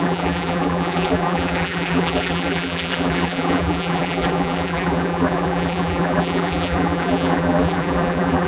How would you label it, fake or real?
fake